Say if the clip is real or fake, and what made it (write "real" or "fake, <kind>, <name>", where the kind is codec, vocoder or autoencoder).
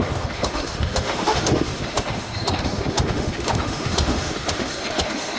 fake, autoencoder, DAC-VAE